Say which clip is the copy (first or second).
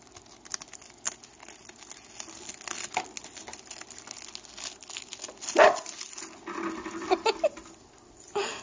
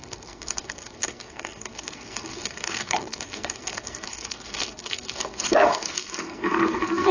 second